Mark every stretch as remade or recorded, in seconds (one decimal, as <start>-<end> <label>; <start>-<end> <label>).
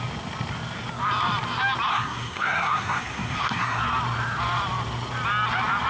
0.0-1.9 recorded; 1.9-3.8 remade; 3.8-5.9 recorded